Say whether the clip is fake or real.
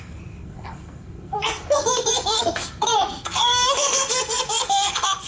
fake